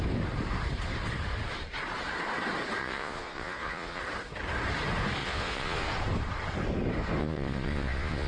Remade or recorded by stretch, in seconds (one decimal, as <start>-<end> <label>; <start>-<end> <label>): 0.0-2.8 recorded; 2.8-4.0 remade; 4.0-5.2 recorded; 5.2-5.9 remade; 5.9-7.2 recorded; 7.2-8.3 remade